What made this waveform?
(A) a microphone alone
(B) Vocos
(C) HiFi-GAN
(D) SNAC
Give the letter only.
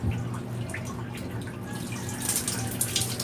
A